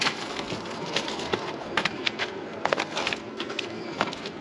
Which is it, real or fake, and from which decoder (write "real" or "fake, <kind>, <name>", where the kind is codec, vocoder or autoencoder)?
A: fake, codec, SNAC